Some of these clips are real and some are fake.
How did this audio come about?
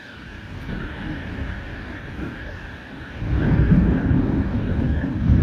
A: fake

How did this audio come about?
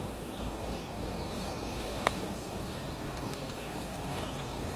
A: fake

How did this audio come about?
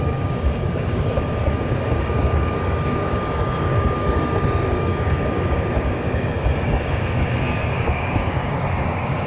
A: fake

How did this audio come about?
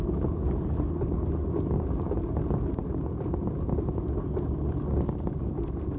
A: real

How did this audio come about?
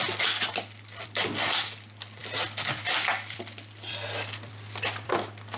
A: real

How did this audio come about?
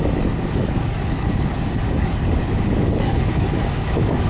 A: fake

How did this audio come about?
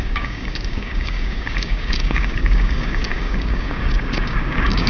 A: fake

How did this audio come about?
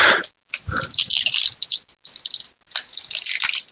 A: real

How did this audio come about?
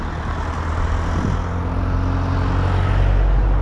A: real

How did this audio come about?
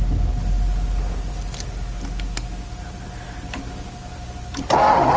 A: real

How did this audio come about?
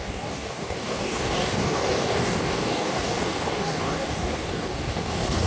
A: fake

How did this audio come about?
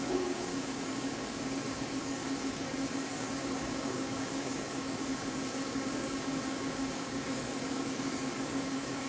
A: fake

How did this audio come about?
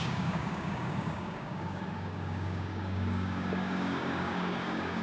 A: fake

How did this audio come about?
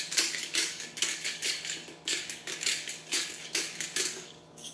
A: fake